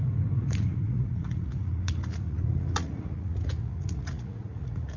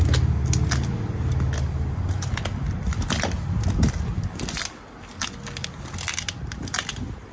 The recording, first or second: second